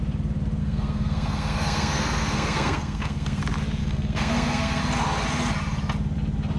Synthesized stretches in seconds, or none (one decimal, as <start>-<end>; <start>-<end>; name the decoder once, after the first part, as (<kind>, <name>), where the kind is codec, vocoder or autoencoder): 0.6-3.4 (codec, SNAC); 3.8-4.8